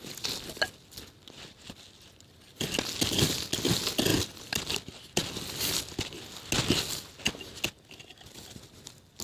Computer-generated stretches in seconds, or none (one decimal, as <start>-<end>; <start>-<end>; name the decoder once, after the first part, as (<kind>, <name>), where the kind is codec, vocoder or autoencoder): none